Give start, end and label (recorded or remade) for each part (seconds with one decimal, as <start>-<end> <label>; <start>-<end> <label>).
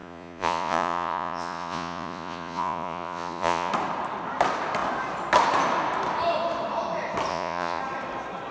0.0-3.7 remade; 3.7-7.3 recorded; 7.3-7.8 remade; 7.8-8.5 recorded